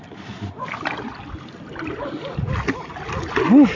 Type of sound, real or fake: real